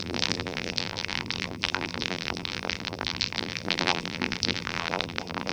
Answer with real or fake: fake